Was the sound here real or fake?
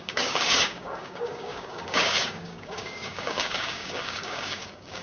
fake